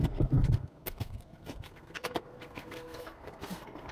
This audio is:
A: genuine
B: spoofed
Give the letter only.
B